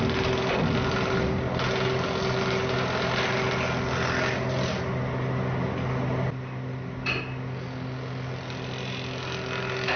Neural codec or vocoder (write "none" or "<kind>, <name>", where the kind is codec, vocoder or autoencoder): none